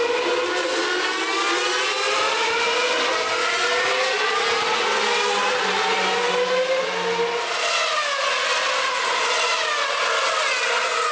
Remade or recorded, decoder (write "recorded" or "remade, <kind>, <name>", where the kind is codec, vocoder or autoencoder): recorded